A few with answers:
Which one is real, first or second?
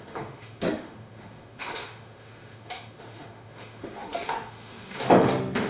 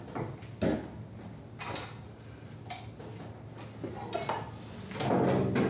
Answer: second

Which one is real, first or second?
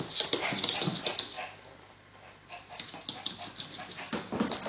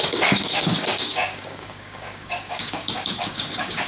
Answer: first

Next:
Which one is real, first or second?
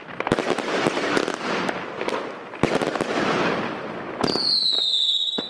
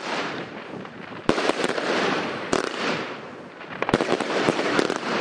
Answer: first